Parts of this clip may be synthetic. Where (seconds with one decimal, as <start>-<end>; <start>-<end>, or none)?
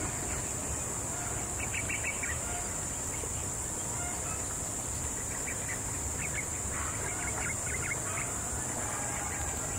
none